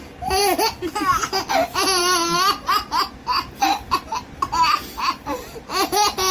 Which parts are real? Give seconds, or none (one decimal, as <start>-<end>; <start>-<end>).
0.0-6.3